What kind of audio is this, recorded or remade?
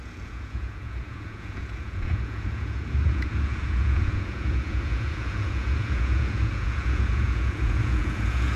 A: remade